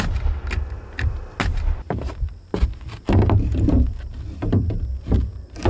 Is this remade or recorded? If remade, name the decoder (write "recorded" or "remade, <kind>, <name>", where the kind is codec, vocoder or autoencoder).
recorded